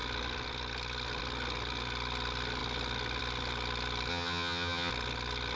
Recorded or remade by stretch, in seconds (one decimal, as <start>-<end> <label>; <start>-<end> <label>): 0.0-4.1 recorded; 4.1-4.9 remade; 4.9-5.6 recorded